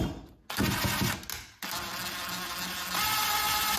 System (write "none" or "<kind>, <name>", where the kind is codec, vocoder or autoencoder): none